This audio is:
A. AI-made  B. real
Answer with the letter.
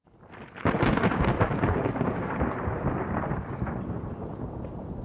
B